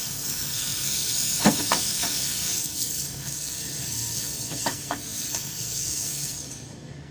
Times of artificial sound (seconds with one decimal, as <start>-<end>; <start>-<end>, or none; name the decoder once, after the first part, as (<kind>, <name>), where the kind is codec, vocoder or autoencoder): 0.0-7.1 (codec, SNAC)